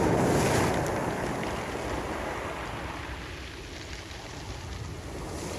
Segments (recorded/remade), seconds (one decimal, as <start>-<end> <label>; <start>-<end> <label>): 0.0-5.6 recorded